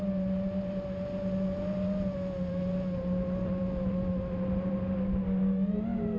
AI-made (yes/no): no